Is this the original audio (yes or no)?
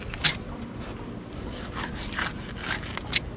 yes